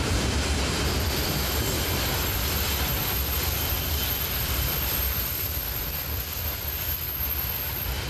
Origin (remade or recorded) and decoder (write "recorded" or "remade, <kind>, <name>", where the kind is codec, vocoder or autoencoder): remade, vocoder, BigVGAN v2